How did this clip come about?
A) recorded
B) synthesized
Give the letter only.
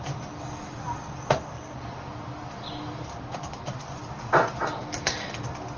A